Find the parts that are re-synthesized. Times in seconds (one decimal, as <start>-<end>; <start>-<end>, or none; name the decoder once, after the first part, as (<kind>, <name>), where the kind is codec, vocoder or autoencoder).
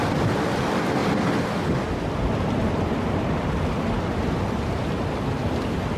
none